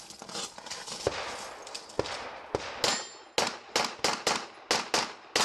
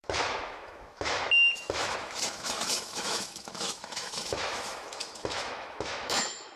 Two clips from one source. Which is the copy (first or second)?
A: second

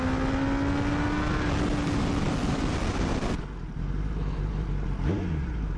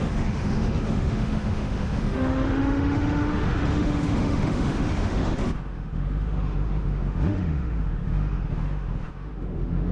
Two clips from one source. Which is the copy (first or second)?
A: second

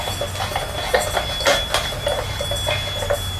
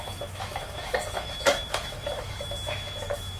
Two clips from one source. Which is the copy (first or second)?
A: second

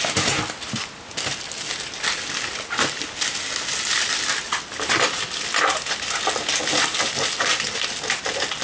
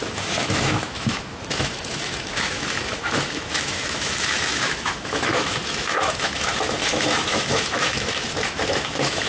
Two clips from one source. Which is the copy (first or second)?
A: second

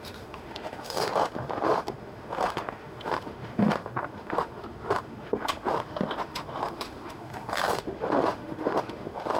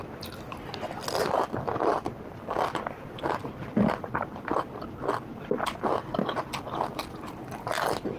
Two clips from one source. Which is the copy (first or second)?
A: first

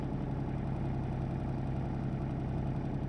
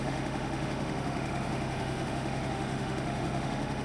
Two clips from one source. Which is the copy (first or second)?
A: second